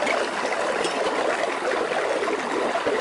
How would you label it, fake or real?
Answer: real